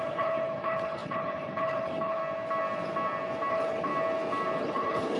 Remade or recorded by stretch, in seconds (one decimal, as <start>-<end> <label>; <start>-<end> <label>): 0.0-2.2 remade; 2.2-3.5 recorded; 3.5-3.9 remade; 3.9-4.6 recorded; 4.6-5.2 remade